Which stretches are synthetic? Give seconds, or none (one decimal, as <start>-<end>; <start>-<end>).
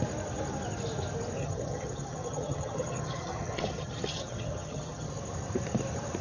1.4-5.1